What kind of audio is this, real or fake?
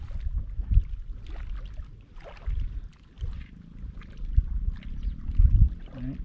real